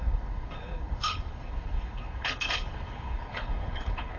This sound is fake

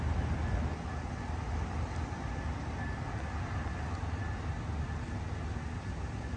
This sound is real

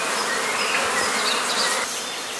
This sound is real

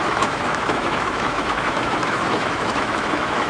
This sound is fake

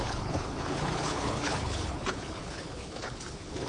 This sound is fake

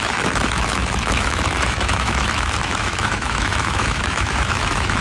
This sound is fake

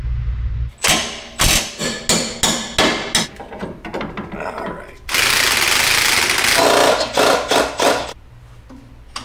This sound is real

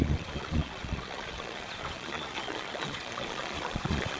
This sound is fake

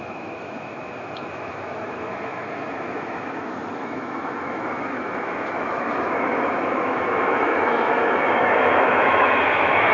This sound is fake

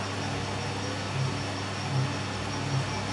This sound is real